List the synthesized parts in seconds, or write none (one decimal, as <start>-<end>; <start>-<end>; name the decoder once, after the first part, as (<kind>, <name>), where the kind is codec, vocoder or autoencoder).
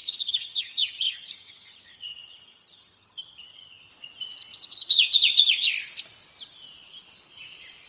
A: 0.0-3.9 (vocoder, HiFi-GAN); 4.5-5.7